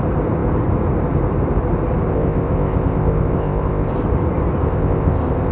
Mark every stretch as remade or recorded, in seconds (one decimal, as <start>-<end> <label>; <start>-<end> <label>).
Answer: 0.0-2.1 recorded; 2.1-3.9 remade; 3.9-4.6 recorded; 4.6-5.5 remade